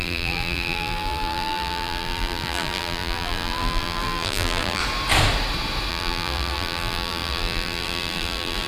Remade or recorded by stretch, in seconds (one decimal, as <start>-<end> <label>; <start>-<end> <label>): 0.0-4.8 remade; 4.8-5.9 recorded; 5.9-8.7 remade